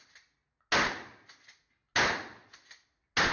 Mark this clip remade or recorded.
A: recorded